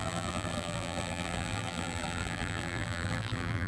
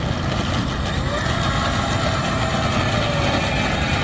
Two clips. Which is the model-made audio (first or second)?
first